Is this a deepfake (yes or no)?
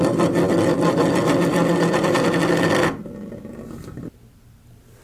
no